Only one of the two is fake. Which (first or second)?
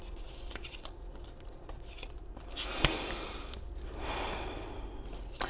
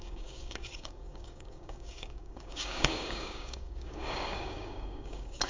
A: second